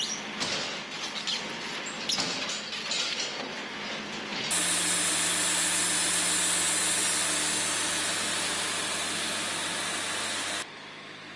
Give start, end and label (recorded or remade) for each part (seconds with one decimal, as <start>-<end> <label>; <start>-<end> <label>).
0.0-11.4 recorded